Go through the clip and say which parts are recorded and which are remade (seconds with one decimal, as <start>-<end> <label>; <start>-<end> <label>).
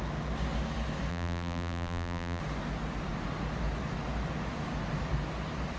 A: 0.0-1.1 recorded; 1.1-2.4 remade; 2.4-5.8 recorded